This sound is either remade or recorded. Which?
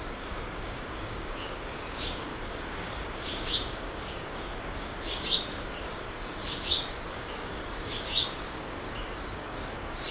remade